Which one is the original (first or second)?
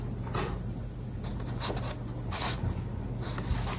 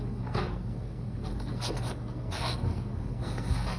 first